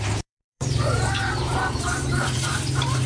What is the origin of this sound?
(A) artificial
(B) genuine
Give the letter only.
A